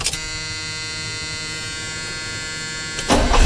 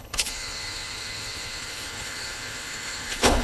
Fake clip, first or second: second